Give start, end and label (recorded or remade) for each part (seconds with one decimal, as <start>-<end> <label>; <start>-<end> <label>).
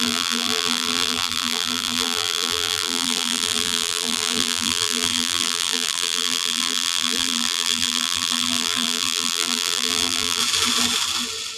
0.0-10.4 remade; 10.4-11.6 recorded